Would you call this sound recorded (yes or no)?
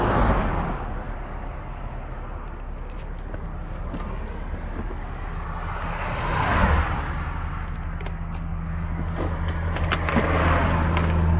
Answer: yes